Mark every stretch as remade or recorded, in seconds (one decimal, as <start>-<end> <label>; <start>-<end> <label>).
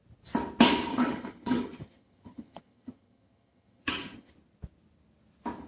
0.0-0.9 recorded; 0.9-4.3 remade; 4.3-5.7 recorded